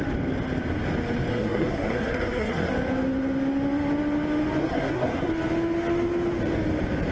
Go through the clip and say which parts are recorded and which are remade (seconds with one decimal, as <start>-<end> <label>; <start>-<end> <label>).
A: 0.0-1.3 recorded; 1.3-2.7 remade; 2.7-4.6 recorded; 4.6-5.3 remade; 5.3-7.1 recorded